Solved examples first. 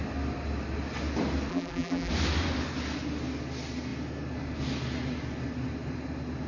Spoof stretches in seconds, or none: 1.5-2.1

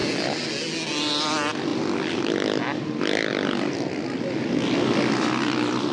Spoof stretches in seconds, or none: none

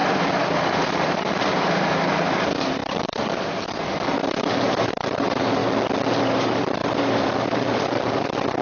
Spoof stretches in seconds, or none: 0.0-2.8; 4.1-5.6; 6.2-8.6

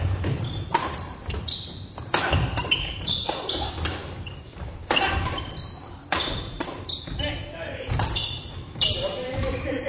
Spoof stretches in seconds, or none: 0.0-9.9

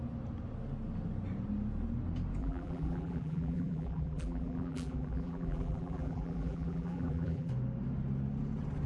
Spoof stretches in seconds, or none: 2.4-7.5

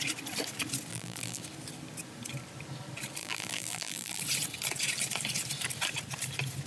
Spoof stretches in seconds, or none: 0.9-1.4; 3.2-4.2

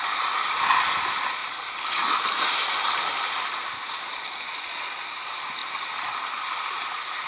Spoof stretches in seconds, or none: none